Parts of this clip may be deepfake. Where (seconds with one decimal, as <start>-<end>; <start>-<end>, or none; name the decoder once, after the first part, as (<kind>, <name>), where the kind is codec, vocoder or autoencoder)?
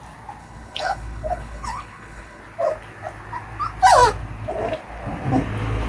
0.4-2.4 (codec, HILCodec)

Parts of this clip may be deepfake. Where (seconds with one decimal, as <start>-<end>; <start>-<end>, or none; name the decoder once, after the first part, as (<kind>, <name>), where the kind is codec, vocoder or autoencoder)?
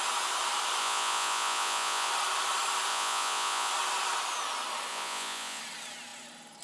0.8-2.1 (vocoder, Vocos); 2.9-3.7; 4.9-5.6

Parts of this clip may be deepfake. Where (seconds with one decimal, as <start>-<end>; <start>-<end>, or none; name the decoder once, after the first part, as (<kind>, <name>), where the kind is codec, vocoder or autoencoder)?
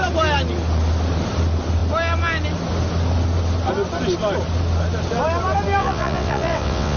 5.8-7.0 (vocoder, WaveNeXt)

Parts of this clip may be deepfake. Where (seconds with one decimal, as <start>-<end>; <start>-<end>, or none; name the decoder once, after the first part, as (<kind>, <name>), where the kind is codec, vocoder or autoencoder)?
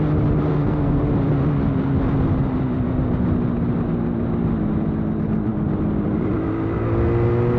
0.5-1.0 (codec, SNAC)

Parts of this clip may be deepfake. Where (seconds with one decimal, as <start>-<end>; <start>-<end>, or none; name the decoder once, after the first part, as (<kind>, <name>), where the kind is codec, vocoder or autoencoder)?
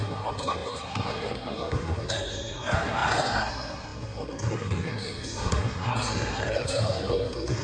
0.0-7.6 (codec, SNAC)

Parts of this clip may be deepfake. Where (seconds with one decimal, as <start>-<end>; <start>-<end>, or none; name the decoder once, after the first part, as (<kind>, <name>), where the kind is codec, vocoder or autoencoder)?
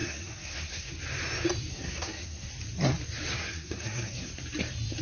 0.0-1.0 (codec, SNAC); 1.7-2.5; 3.3-4.3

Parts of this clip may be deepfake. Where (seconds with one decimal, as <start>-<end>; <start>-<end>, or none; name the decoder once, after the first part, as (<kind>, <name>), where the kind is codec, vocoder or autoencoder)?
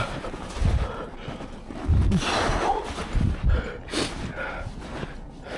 none